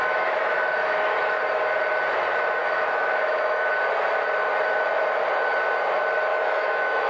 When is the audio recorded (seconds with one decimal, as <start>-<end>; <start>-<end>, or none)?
1.4-2.6; 3.7-6.3